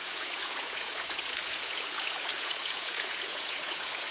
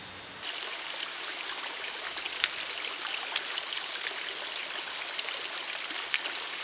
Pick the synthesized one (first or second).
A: first